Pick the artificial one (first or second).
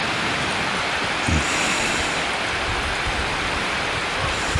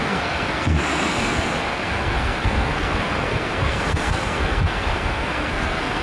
second